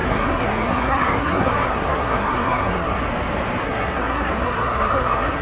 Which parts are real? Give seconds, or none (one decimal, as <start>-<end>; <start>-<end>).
2.9-3.6